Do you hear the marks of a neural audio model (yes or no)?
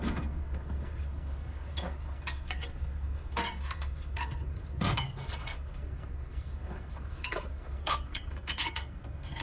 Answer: yes